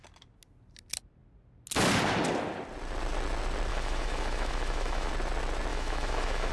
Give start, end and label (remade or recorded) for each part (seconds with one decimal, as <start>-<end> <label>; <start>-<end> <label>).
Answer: 0.0-3.7 recorded; 3.7-5.1 remade; 5.1-5.7 recorded; 5.7-6.5 remade